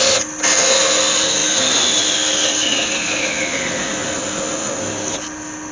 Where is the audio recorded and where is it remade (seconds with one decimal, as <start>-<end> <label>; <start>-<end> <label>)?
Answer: 0.0-5.7 recorded